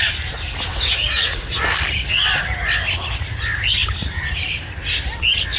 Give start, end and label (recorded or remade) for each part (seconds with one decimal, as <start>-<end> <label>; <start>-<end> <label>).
0.0-0.7 recorded; 0.7-1.5 remade; 1.5-5.6 recorded